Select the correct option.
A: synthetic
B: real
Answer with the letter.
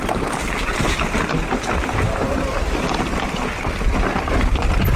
B